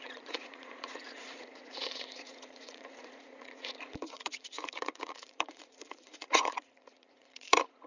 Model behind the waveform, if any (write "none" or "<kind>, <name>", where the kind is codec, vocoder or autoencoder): vocoder, Vocos